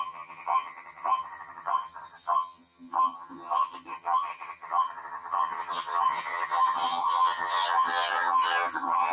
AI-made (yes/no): yes